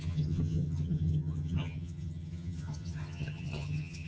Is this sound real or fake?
fake